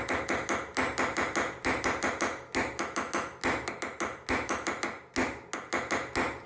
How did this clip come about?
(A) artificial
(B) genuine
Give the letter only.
B